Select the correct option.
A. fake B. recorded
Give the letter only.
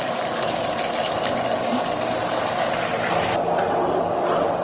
B